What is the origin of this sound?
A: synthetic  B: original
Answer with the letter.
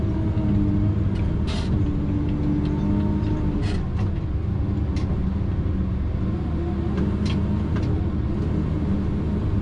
B